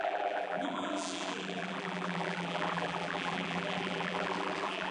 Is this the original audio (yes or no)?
no